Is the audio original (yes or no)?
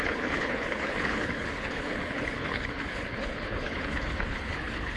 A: no